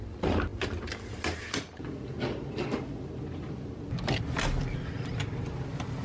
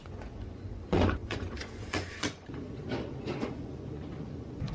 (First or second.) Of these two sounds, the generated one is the second